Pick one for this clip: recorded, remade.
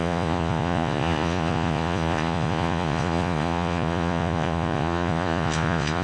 remade